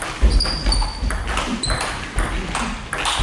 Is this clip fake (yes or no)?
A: no